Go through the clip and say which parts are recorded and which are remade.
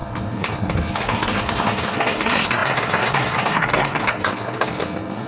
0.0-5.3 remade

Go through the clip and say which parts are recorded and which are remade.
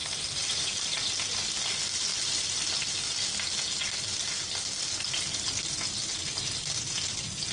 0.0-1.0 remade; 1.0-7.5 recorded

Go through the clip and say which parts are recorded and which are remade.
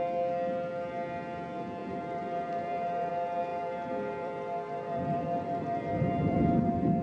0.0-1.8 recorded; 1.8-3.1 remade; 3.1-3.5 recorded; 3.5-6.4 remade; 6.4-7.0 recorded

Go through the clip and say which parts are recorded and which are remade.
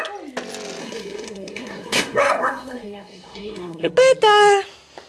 0.0-0.8 recorded; 0.8-3.9 remade; 3.9-5.1 recorded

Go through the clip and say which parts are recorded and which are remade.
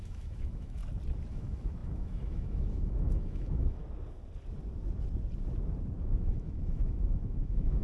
0.0-0.8 remade; 0.8-1.3 recorded; 1.3-3.8 remade; 3.8-6.0 recorded; 6.0-7.8 remade